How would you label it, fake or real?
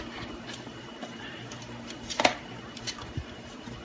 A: fake